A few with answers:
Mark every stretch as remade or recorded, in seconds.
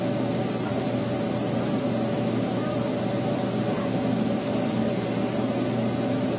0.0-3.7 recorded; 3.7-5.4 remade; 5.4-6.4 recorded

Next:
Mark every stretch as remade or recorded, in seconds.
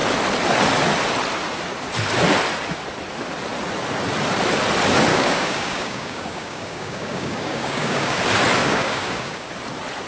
0.0-5.1 recorded; 5.1-8.2 remade; 8.2-8.6 recorded; 8.6-9.5 remade; 9.5-10.1 recorded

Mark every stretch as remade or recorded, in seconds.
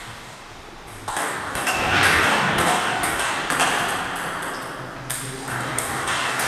0.0-0.5 remade; 0.5-1.1 recorded; 1.1-3.4 remade; 3.4-5.5 recorded; 5.5-6.5 remade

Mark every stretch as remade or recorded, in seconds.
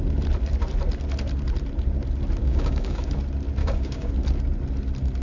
0.0-2.4 recorded; 2.4-3.1 remade; 3.1-3.6 recorded; 3.6-4.1 remade; 4.1-5.2 recorded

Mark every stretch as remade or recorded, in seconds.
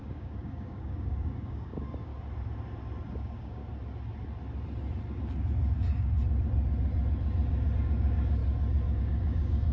0.0-2.1 remade; 2.1-3.1 recorded; 3.1-3.6 remade; 3.6-7.8 recorded; 7.8-8.4 remade; 8.4-9.0 recorded; 9.0-9.7 remade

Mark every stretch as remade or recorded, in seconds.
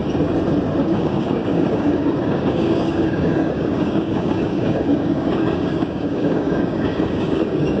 0.0-0.8 recorded; 0.8-7.8 remade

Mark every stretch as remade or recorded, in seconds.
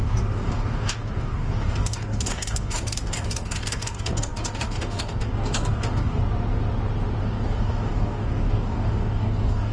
0.0-6.2 remade; 6.2-7.2 recorded; 7.2-9.7 remade